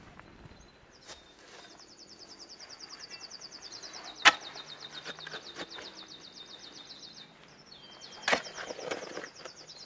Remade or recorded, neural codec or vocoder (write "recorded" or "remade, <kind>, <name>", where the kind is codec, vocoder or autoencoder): recorded